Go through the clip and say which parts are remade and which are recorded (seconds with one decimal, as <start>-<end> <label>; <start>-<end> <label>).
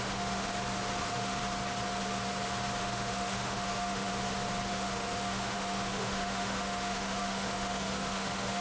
0.0-0.5 remade; 0.5-1.0 recorded; 1.0-1.4 remade; 1.4-2.8 recorded; 2.8-4.1 remade; 4.1-4.7 recorded; 4.7-8.6 remade